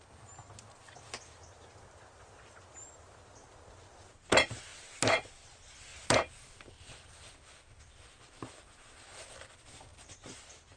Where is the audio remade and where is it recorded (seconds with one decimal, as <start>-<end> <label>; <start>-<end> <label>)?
0.0-10.8 recorded